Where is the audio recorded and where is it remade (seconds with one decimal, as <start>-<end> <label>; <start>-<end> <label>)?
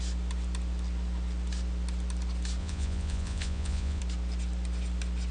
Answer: 0.0-2.6 recorded; 2.6-4.0 remade; 4.0-5.3 recorded